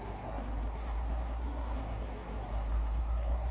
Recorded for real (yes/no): no